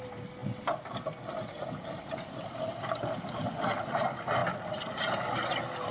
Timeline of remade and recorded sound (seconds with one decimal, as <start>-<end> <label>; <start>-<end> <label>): 0.0-5.9 recorded